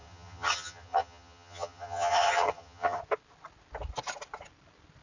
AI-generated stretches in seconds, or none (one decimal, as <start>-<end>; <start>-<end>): 0.0-3.0